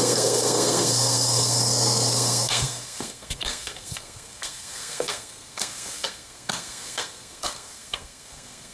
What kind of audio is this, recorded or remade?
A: remade